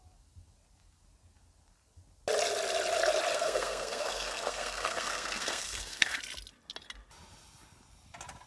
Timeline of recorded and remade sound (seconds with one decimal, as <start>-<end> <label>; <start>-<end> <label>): 0.0-3.3 recorded; 3.3-6.2 remade; 6.2-8.5 recorded